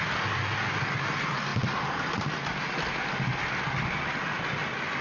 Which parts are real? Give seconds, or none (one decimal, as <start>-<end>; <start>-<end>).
0.0-5.0